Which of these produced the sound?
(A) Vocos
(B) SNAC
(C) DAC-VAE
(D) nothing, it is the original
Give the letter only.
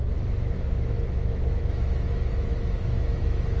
C